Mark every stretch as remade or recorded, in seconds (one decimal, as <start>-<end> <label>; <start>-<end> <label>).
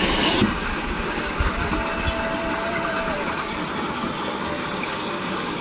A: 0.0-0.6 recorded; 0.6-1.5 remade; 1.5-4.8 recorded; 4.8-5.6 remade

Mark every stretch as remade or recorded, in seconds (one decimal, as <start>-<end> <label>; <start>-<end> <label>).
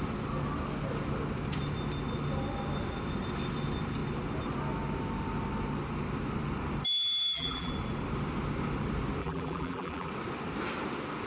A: 0.0-7.0 recorded; 7.0-7.7 remade; 7.7-9.2 recorded; 9.2-10.1 remade; 10.1-11.3 recorded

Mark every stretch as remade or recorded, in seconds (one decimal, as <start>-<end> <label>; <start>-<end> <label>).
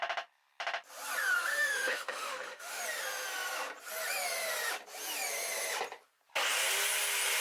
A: 0.0-1.5 recorded; 1.5-2.8 remade; 2.8-7.4 recorded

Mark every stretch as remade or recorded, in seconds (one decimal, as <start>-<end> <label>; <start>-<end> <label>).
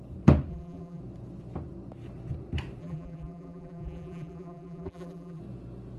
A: 0.0-0.5 recorded; 0.5-1.0 remade; 1.0-2.8 recorded; 2.8-5.4 remade; 5.4-6.0 recorded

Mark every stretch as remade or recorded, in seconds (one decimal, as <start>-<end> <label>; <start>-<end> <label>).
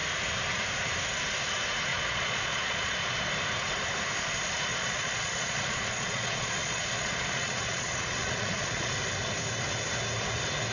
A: 0.0-1.9 recorded; 1.9-3.3 remade; 3.3-4.7 recorded; 4.7-8.9 remade; 8.9-10.7 recorded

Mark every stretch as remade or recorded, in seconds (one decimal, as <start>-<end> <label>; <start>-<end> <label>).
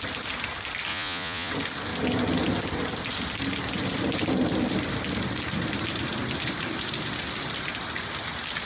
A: 0.0-0.9 recorded; 0.9-1.5 remade; 1.5-8.7 recorded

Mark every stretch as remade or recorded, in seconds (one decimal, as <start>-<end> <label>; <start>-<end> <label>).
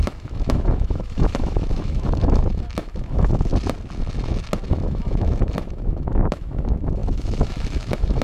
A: 0.0-3.5 remade; 3.5-4.7 recorded; 4.7-8.2 remade